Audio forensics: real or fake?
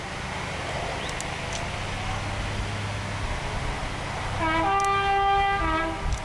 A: real